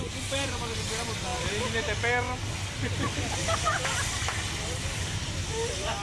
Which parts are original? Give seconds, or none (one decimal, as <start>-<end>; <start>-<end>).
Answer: 0.0-6.0